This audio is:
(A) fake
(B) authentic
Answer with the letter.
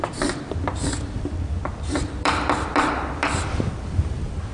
A